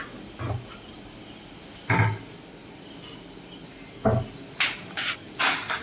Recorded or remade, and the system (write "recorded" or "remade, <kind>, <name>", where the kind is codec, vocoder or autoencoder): recorded